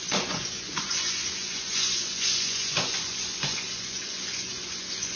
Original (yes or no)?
no